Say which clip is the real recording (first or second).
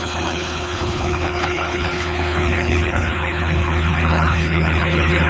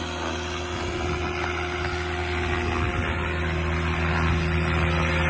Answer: second